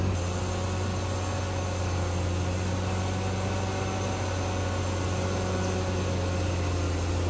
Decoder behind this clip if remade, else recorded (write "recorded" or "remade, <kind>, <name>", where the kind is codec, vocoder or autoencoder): recorded